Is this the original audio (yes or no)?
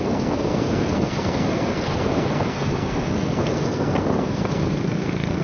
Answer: no